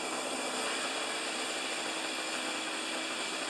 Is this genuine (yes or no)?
yes